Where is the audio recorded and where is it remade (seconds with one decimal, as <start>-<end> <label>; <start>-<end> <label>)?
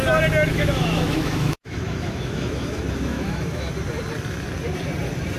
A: 0.0-0.5 recorded; 0.5-3.7 remade; 3.7-5.4 recorded